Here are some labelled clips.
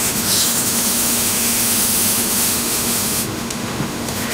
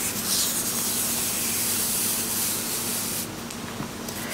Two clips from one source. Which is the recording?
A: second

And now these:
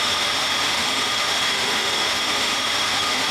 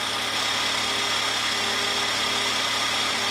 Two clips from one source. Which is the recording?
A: second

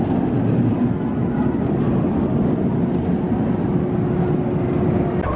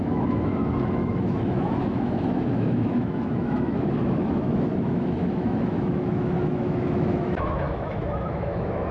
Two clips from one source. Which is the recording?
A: first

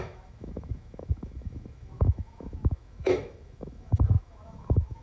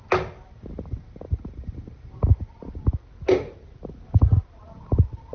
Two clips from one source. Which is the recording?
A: second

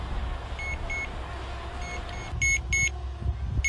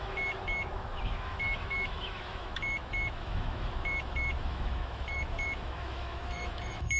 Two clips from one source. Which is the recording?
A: first